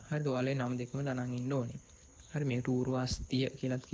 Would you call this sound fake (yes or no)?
yes